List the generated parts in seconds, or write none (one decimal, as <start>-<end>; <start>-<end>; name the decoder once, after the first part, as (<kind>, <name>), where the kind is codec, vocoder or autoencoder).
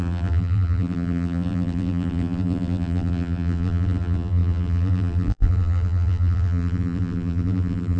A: 0.0-8.0 (vocoder, BigVGAN v2)